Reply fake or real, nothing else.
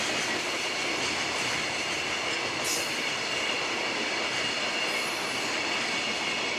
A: real